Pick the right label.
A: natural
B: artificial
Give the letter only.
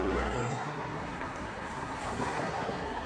B